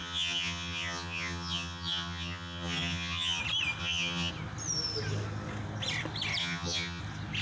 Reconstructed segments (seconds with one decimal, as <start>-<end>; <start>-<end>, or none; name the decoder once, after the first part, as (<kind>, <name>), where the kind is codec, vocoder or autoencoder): 0.0-3.4 (vocoder, HiFi-GAN); 3.8-4.3; 6.4-7.0

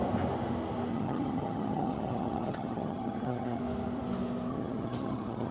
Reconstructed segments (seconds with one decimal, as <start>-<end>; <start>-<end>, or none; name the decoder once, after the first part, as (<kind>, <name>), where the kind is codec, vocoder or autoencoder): 0.9-3.6 (vocoder, HiFi-GAN); 4.5-5.5

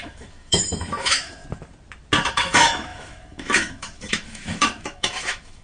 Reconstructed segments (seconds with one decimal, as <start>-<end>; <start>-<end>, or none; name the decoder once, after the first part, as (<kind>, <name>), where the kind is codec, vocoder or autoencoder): 0.0-1.4 (autoencoder, DAC-VAE); 2.3-5.6

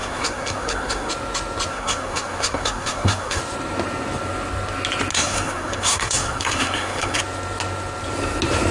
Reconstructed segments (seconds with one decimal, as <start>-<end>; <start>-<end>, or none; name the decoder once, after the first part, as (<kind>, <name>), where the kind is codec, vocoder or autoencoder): 0.0-1.1 (codec, SNAC); 1.7-3.4; 5.1-7.2

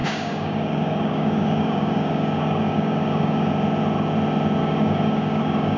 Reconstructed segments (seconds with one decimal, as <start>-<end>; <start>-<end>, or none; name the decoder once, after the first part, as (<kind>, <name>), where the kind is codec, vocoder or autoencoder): 0.0-3.5 (codec, DAC); 4.6-5.8

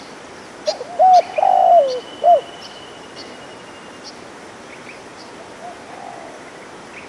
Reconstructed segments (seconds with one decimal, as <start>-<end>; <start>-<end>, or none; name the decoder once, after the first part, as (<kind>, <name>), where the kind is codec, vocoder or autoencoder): none